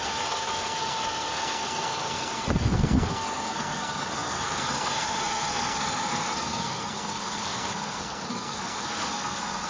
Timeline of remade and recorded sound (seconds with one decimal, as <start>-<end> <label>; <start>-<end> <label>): 0.0-9.7 remade